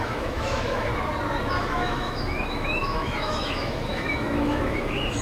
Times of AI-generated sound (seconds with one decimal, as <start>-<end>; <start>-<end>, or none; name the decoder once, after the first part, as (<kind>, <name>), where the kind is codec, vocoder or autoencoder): 0.0-0.9 (autoencoder, DAC-VAE); 1.6-5.2